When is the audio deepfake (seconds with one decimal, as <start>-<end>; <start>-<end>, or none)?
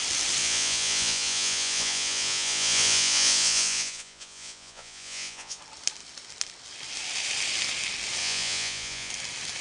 0.4-5.6; 8.2-9.1